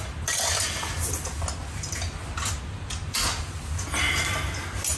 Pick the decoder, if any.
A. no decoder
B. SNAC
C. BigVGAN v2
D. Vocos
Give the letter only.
A